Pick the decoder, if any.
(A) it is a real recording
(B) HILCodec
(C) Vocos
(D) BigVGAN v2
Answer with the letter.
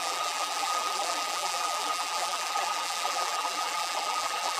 D